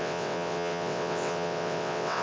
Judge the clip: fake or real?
fake